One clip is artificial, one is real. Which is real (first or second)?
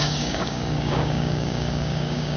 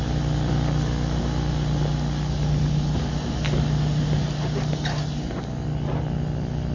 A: second